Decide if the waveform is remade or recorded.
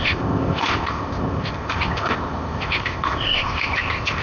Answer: remade